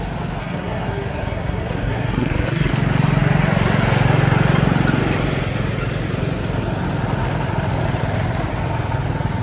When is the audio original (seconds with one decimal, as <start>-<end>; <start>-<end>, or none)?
0.0-0.4; 2.7-9.4